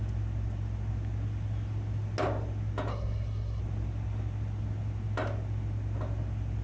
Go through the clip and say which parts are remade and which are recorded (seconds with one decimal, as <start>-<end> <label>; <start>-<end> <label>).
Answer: 0.0-2.9 recorded; 2.9-3.6 remade; 3.6-6.6 recorded

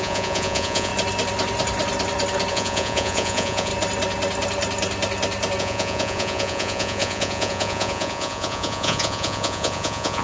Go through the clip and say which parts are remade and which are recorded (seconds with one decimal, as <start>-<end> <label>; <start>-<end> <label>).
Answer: 0.0-0.9 remade; 0.9-2.5 recorded; 2.5-3.7 remade; 3.7-5.6 recorded; 5.6-10.2 remade

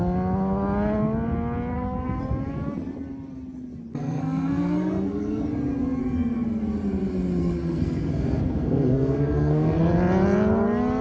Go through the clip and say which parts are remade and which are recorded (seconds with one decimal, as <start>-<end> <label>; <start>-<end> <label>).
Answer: 0.0-1.7 recorded; 1.7-2.2 remade; 2.2-3.9 recorded; 3.9-5.4 remade; 5.4-6.0 recorded; 6.0-6.6 remade; 6.6-7.4 recorded; 7.4-9.8 remade; 9.8-11.0 recorded